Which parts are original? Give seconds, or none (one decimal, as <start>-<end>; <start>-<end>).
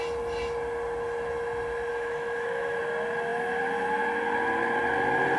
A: 0.0-1.9; 2.8-5.4